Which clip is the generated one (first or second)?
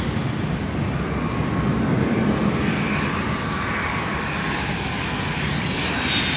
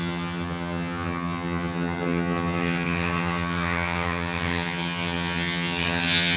second